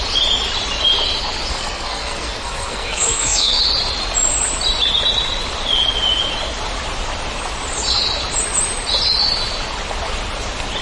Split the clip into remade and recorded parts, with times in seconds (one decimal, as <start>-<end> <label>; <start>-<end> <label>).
0.0-1.5 recorded; 1.5-3.6 remade; 3.6-10.8 recorded